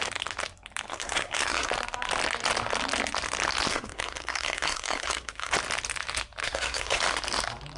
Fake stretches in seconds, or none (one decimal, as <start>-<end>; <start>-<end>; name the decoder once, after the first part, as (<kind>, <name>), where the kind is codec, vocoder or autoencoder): 0.9-1.7 (codec, SNAC); 3.7-5.5; 6.4-7.0

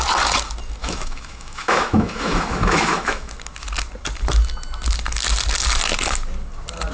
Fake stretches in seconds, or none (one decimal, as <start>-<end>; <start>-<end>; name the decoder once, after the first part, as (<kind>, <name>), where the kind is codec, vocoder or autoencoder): 0.8-3.3 (autoencoder, DAC-VAE)

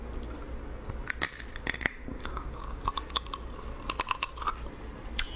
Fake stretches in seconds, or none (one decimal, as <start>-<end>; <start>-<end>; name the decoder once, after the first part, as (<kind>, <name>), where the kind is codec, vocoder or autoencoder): 2.1-2.8 (codec, DAC)

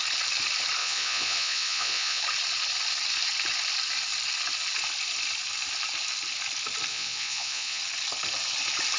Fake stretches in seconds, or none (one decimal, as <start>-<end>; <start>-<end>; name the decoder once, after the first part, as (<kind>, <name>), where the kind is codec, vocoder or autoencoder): 0.8-2.2 (vocoder, Vocos); 6.9-7.8

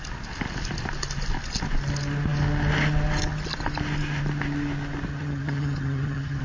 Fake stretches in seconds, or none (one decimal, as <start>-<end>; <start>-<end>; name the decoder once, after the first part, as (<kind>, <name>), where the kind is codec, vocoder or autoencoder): 5.1-6.4 (vocoder, HiFi-GAN)

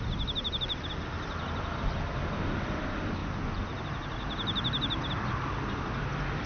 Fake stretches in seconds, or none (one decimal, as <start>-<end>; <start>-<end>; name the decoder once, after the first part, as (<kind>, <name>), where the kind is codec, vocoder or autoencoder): none